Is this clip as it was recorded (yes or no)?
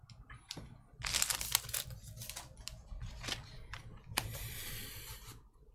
yes